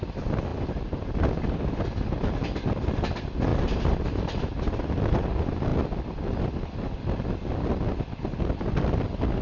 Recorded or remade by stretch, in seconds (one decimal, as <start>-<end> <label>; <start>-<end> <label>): 0.0-3.5 recorded; 3.5-4.4 remade; 4.4-9.4 recorded